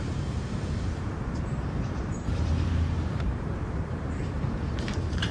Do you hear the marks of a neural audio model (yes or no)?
yes